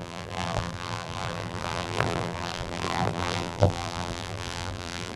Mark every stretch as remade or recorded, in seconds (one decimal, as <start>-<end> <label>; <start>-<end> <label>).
0.0-5.2 remade